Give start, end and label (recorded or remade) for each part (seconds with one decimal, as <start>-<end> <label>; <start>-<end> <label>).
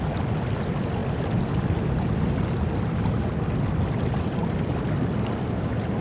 0.0-6.0 recorded